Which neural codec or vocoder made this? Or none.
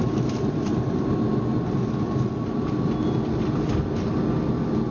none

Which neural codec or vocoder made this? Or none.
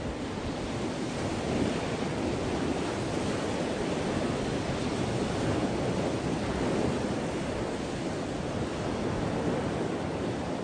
none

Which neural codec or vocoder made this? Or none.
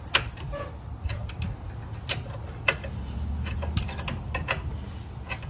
none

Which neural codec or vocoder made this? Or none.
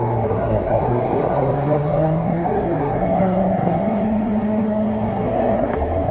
codec, SNAC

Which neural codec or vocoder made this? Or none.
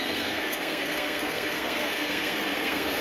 codec, SNAC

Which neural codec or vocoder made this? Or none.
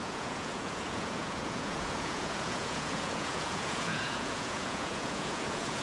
vocoder, Vocos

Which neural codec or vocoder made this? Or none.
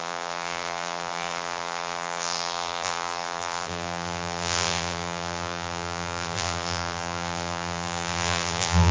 vocoder, BigVGAN v2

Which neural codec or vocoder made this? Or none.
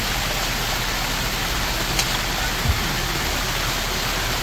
none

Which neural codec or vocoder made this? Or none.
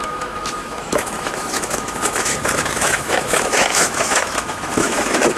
autoencoder, DAC-VAE